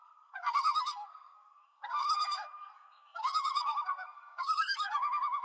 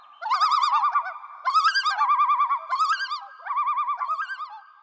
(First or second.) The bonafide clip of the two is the second